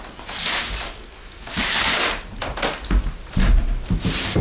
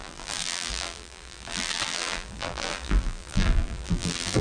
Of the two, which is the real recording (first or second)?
first